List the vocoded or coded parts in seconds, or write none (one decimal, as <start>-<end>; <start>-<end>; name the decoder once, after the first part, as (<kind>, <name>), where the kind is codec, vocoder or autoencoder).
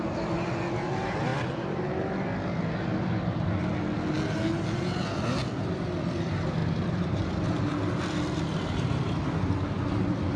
6.6-9.5 (vocoder, BigVGAN v2)